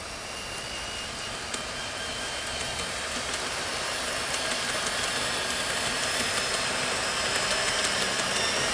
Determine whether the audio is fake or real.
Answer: real